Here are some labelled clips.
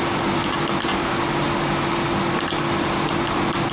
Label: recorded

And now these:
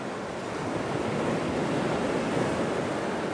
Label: recorded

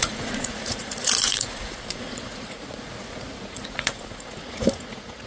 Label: remade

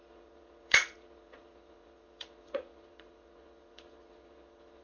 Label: remade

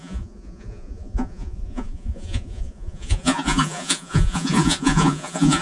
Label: remade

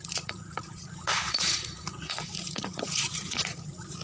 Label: remade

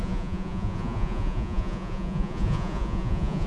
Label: remade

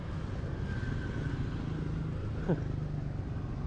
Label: recorded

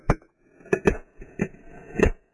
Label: remade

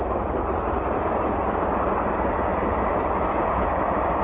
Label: recorded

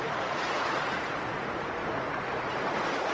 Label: remade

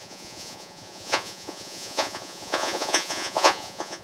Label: remade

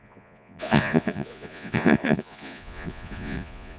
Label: remade